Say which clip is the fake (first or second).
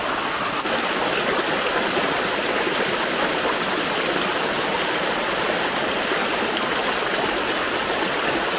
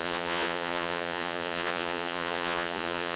second